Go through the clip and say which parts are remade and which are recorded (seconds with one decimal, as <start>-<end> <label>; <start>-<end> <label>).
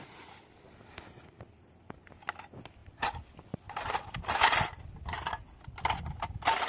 0.0-6.7 recorded